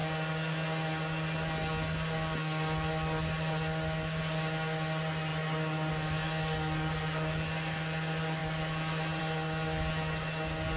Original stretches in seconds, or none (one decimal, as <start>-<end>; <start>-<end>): 0.0-10.8